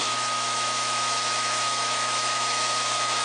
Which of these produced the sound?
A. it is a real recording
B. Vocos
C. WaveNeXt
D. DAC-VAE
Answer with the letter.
D